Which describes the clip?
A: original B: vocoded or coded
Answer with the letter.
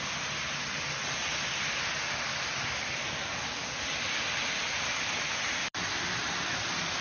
A